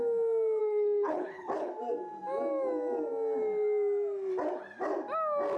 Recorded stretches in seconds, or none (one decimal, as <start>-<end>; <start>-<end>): 0.0-0.6; 1.7-5.6